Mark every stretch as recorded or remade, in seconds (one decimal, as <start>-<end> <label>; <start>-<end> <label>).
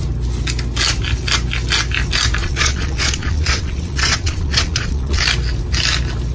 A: 0.0-2.4 recorded; 2.4-5.2 remade; 5.2-6.3 recorded